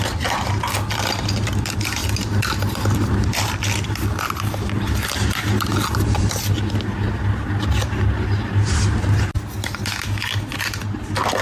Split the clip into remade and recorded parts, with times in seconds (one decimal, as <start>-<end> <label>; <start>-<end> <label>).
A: 0.0-11.4 recorded